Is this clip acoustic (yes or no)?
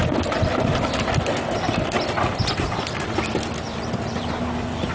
no